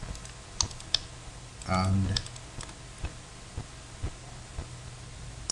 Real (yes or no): yes